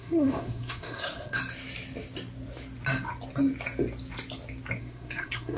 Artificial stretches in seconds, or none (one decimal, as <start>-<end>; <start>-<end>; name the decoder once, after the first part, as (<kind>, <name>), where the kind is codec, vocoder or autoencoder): 0.0-1.4 (codec, SNAC); 4.8-5.6